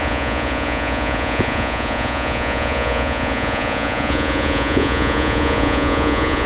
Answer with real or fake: fake